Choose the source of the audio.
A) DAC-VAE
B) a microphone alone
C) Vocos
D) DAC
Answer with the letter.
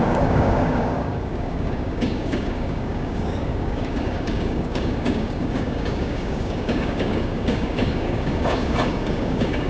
D